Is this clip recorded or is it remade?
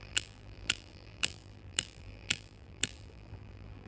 remade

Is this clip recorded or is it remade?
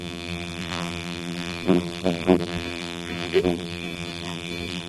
remade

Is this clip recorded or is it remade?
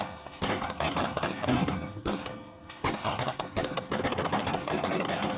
remade